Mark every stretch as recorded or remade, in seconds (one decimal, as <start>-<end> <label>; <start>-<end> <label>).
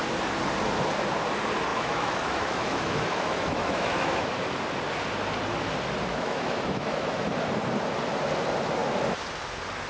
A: 0.0-1.7 recorded; 1.7-4.3 remade; 4.3-6.1 recorded; 6.1-7.3 remade; 7.3-9.9 recorded